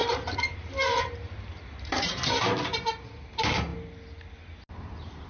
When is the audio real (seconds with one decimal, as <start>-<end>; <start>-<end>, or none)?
3.7-4.7